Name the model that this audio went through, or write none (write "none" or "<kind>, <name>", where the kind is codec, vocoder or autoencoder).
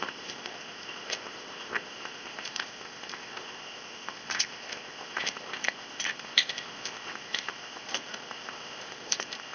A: codec, ZipCodec